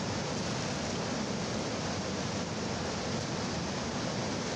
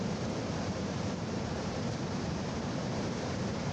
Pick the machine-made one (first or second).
second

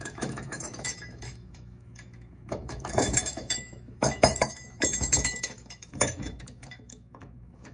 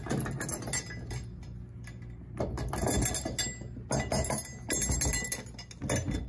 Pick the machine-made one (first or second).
first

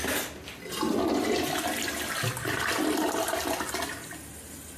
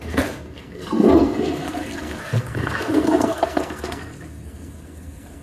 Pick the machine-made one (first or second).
second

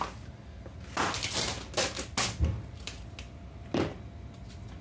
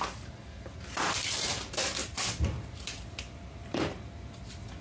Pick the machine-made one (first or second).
second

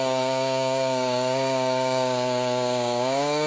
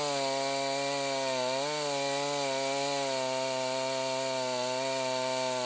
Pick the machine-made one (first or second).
first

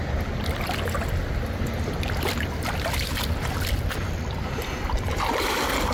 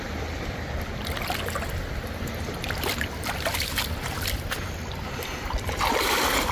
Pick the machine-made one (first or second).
second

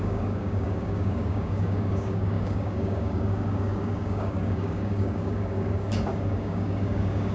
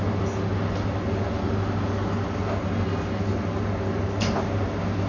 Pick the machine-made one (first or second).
first